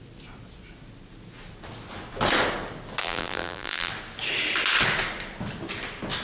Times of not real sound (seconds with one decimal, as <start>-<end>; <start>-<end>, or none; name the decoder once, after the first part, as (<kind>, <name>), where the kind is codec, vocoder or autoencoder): 3.0-3.9 (vocoder, BigVGAN v2)